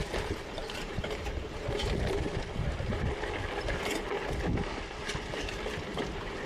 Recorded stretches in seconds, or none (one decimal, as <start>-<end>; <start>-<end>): 0.0-0.6; 2.3-6.5